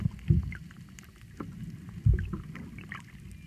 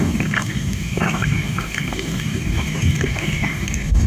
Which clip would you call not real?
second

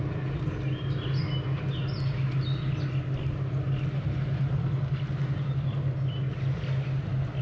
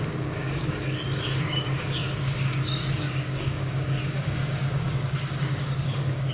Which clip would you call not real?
second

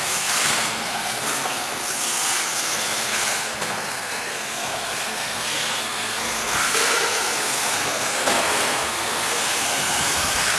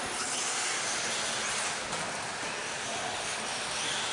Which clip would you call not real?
first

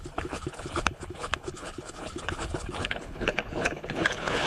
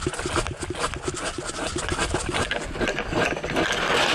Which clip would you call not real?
first